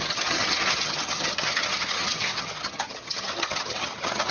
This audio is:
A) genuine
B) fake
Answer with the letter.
B